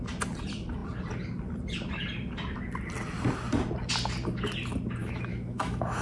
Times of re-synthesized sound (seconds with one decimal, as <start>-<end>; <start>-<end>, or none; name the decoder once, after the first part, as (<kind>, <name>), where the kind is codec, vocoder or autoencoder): 5.0-6.0 (autoencoder, DAC-VAE)